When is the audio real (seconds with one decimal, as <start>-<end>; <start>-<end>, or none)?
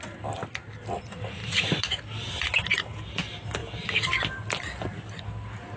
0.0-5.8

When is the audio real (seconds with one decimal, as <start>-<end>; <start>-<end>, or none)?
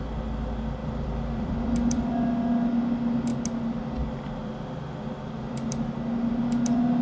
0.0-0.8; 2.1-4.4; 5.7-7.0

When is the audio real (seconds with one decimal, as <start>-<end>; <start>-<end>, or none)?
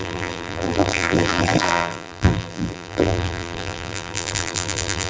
none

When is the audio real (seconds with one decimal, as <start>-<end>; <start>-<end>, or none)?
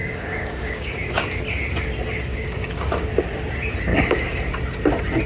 1.4-2.3; 3.1-3.9; 4.4-5.3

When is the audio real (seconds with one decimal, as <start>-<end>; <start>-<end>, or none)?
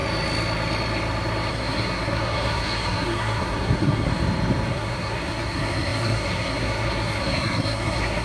0.0-1.5; 4.1-4.7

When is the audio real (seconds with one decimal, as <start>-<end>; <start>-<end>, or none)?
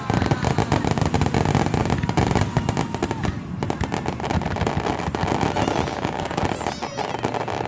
0.0-5.9; 6.4-7.7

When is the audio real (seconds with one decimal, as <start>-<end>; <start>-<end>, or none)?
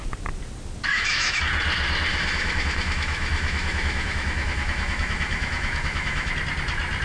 0.0-0.9; 1.4-2.1; 6.3-7.0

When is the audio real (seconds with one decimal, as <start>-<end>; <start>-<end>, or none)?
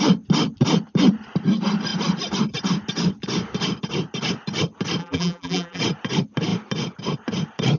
0.0-5.0; 5.8-7.8